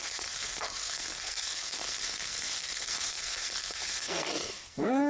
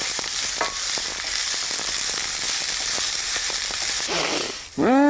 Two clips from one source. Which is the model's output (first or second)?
first